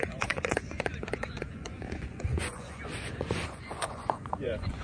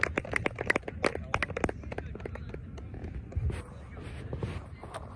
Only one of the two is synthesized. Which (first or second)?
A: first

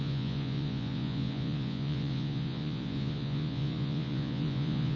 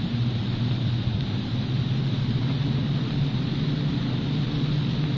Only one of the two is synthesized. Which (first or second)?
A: first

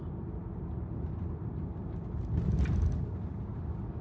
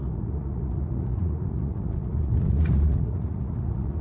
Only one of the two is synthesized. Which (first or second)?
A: second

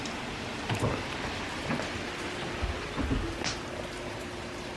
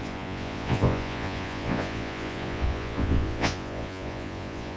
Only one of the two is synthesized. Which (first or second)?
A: second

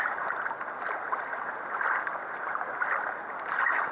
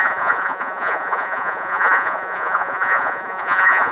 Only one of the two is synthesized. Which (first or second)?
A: second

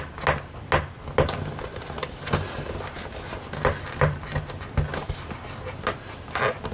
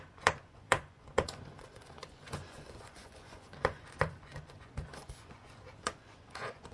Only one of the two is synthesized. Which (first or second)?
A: second